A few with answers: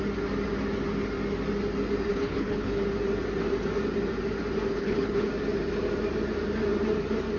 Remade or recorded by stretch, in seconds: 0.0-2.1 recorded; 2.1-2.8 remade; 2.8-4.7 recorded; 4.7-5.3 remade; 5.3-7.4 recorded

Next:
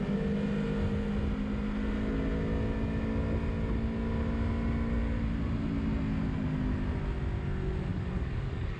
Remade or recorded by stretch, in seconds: 0.0-7.9 recorded; 7.9-8.8 remade

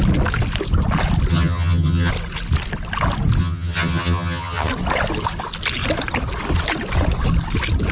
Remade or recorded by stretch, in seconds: 0.0-1.3 recorded; 1.3-2.1 remade; 2.1-3.4 recorded; 3.4-4.7 remade; 4.7-7.9 recorded

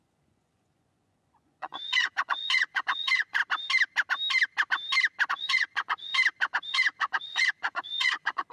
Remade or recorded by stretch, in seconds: 0.0-3.4 remade; 3.4-5.3 recorded; 5.3-6.1 remade; 6.1-6.7 recorded; 6.7-8.5 remade